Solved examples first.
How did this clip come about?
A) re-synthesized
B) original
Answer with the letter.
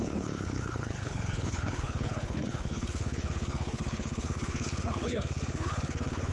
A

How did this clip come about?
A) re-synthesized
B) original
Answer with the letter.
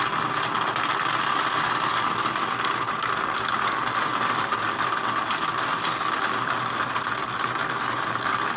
B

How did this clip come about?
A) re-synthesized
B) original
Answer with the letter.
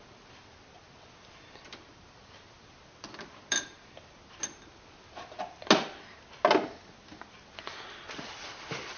B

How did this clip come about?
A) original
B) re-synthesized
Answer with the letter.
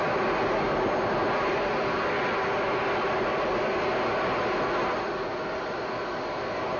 A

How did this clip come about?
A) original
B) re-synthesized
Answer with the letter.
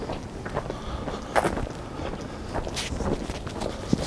A